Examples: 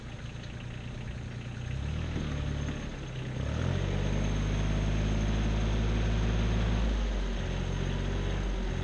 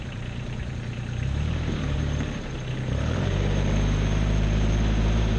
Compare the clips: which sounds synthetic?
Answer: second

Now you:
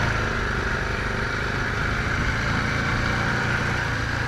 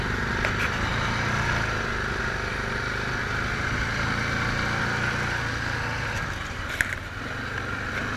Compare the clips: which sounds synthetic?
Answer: first